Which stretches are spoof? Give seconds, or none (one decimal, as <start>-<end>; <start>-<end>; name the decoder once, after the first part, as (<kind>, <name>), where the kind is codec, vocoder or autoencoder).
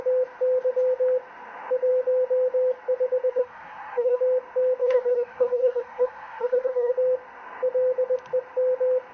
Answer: 3.3-4.2 (codec, SNAC); 4.8-6.9